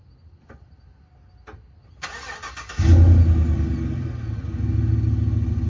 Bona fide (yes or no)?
yes